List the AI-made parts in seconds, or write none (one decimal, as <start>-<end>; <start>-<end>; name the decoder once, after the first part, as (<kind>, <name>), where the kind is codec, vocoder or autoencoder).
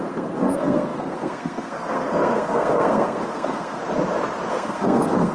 0.0-3.8 (codec, SNAC); 4.5-5.3